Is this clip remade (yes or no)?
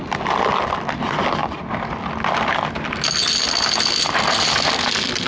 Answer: no